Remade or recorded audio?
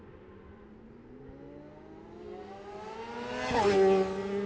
recorded